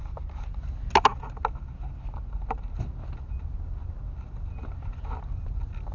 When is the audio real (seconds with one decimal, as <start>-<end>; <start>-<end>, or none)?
0.0-5.9